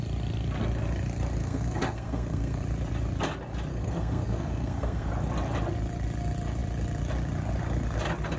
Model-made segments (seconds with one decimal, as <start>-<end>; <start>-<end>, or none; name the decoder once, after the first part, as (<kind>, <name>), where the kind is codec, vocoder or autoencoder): 1.4-2.6 (codec, SNAC); 3.7-5.1